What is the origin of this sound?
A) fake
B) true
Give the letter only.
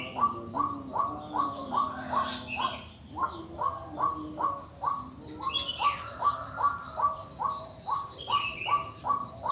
B